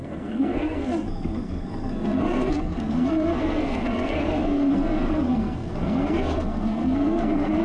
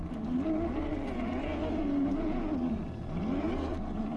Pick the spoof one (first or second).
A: first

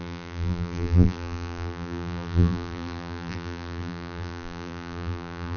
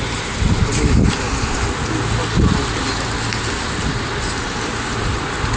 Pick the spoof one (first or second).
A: first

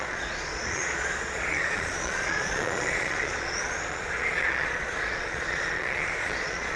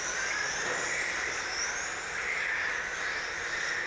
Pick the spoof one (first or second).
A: first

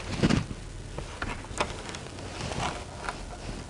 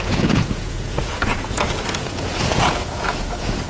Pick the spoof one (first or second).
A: second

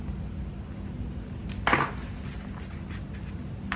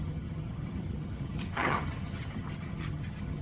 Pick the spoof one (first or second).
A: second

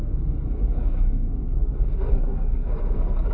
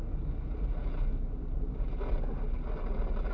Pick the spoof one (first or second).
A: first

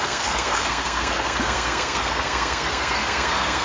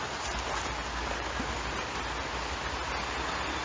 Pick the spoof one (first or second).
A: first